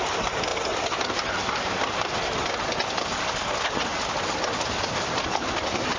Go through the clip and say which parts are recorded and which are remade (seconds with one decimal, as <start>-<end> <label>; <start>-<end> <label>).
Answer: 0.0-6.0 recorded